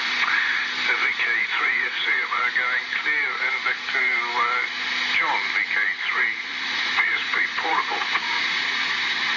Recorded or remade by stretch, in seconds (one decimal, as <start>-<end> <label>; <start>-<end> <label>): 0.0-0.5 remade; 0.5-1.4 recorded; 1.4-2.4 remade; 2.4-6.6 recorded; 6.6-9.4 remade

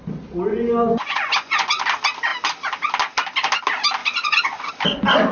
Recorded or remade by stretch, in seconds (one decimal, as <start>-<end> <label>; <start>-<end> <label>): 0.0-0.5 recorded; 0.5-1.8 remade; 1.8-4.0 recorded; 4.0-4.7 remade; 4.7-5.3 recorded

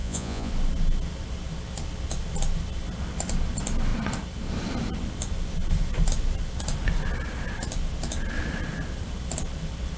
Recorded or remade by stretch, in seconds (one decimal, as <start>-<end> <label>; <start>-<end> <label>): 0.0-0.5 remade; 0.5-10.0 recorded

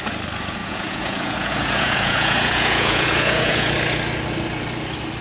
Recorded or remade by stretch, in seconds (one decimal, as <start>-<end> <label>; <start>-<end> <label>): 0.0-0.6 recorded; 0.6-3.7 remade; 3.7-5.2 recorded

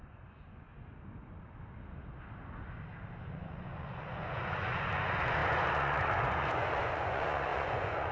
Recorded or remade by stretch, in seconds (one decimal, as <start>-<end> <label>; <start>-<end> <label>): 0.0-0.7 remade; 0.7-3.2 recorded; 3.2-8.1 remade